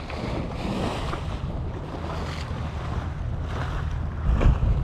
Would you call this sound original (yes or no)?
yes